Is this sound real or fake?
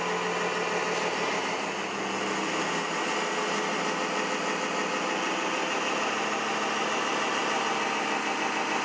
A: real